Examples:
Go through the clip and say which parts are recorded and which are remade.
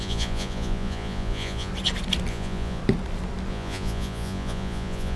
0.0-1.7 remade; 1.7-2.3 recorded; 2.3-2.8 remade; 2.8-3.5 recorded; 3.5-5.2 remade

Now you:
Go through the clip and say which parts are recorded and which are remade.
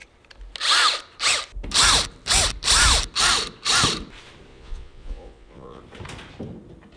0.0-4.5 recorded; 4.5-5.8 remade; 5.8-7.0 recorded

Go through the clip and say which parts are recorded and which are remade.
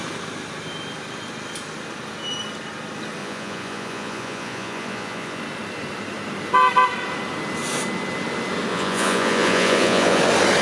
0.0-3.2 recorded; 3.2-5.4 remade; 5.4-8.7 recorded; 8.7-10.2 remade; 10.2-10.6 recorded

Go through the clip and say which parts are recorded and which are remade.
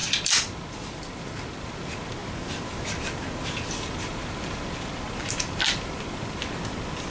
0.0-7.1 recorded